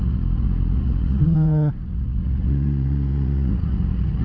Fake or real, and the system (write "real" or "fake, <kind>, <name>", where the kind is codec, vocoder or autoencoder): fake, vocoder, Vocos